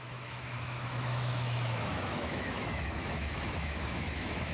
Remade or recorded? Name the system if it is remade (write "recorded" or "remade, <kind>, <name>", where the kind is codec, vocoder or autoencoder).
remade, autoencoder, DAC-VAE